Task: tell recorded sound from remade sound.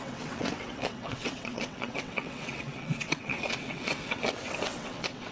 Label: remade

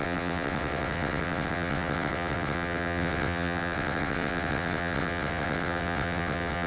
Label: remade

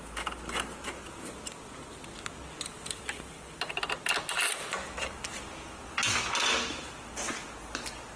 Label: recorded